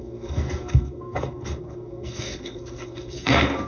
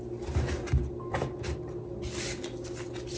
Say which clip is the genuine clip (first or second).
second